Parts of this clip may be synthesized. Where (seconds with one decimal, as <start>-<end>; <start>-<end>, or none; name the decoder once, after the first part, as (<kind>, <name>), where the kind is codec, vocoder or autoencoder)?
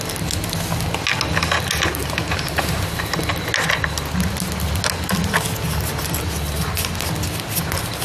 2.0-2.8 (vocoder, BigVGAN v2)